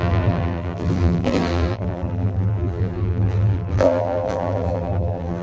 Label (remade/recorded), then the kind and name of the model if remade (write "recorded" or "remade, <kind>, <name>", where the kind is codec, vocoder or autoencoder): remade, vocoder, BigVGAN v2